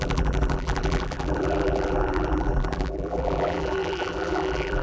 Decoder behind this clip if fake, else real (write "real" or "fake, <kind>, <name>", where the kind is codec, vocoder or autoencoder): fake, vocoder, BigVGAN v2